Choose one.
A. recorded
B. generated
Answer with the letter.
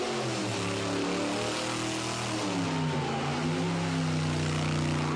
A